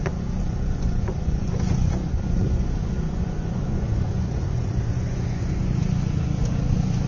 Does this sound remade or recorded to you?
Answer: remade